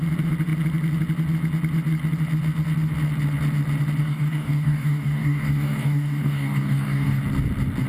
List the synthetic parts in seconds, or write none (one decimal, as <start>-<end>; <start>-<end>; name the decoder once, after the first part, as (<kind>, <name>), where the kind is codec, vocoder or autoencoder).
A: 4.0-7.2 (codec, DAC)